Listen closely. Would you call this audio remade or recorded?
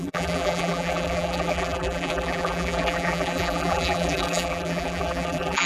remade